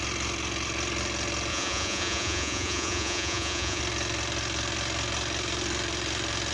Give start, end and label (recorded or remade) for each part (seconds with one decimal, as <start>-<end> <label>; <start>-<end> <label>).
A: 0.0-1.5 recorded; 1.5-3.8 remade; 3.8-6.5 recorded